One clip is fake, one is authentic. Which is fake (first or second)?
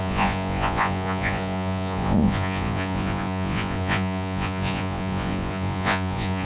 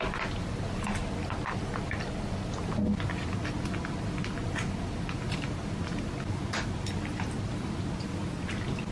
first